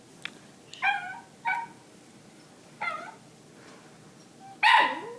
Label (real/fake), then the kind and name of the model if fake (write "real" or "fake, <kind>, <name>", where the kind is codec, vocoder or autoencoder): real